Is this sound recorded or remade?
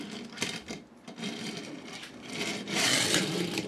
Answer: remade